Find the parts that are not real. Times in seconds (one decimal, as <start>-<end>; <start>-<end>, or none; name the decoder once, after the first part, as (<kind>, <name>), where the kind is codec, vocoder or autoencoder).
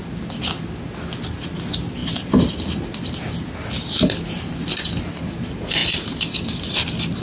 2.0-2.5 (vocoder, BigVGAN v2)